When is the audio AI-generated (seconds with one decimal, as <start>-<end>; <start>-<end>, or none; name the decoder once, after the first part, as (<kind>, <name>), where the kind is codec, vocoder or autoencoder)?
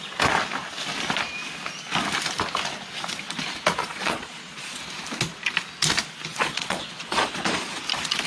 3.8-4.8 (vocoder, Vocos); 6.3-7.8